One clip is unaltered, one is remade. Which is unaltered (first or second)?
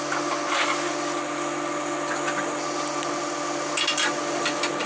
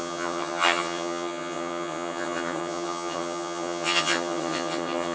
first